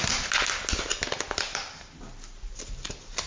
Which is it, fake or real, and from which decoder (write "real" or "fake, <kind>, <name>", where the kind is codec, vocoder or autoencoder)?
real